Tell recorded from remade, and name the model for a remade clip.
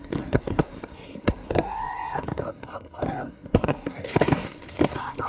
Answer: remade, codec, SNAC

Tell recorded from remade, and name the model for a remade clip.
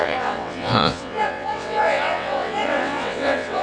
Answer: remade, vocoder, WaveNeXt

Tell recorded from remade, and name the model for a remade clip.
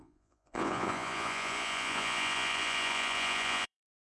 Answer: remade, vocoder, Vocos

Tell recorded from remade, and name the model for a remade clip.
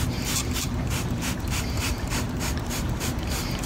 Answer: remade, vocoder, BigVGAN v2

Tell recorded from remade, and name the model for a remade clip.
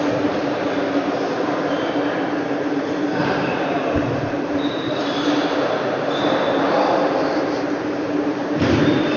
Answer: remade, vocoder, BigVGAN v2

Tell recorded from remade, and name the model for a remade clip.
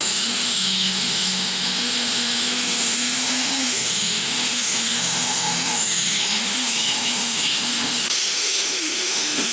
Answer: remade, autoencoder, DAC-VAE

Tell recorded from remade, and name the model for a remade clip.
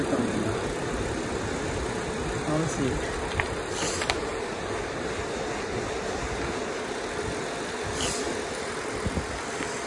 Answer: recorded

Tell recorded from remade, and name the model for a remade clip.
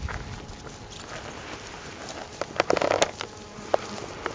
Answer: recorded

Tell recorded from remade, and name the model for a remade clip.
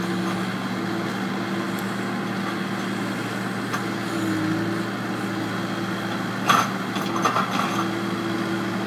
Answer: recorded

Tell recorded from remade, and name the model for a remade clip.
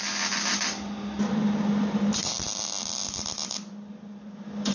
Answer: remade, vocoder, BigVGAN v2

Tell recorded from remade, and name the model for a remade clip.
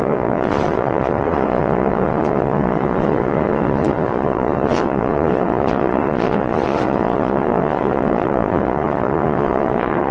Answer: remade, vocoder, Vocos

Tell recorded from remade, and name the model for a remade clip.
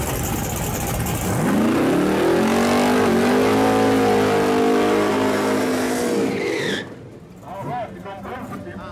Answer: recorded